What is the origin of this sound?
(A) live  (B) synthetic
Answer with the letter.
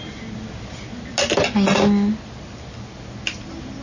A